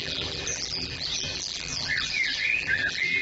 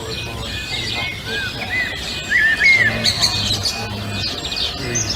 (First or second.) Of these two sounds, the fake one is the first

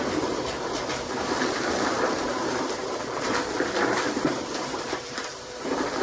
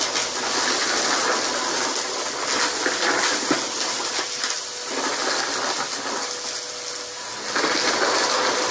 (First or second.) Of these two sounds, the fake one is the first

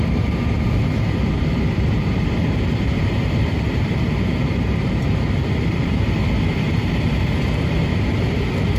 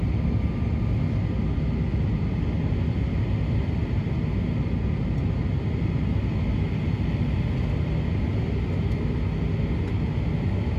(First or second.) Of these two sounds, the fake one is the first